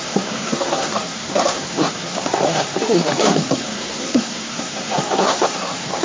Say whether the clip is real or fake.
fake